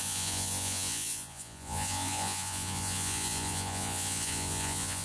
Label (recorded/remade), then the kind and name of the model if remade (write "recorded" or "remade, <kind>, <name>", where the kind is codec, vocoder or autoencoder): remade, vocoder, Vocos